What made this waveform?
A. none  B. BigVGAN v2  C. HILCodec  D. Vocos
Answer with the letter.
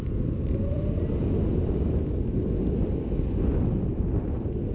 B